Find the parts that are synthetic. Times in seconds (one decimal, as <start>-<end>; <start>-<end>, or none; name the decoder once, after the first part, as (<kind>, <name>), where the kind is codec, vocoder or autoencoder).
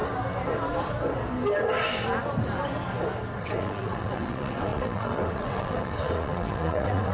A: 3.4-7.1 (vocoder, WaveNeXt)